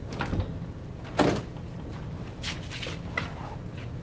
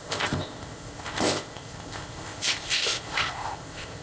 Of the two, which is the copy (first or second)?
second